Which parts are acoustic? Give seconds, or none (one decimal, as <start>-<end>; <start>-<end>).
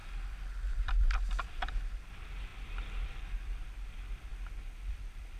0.0-5.4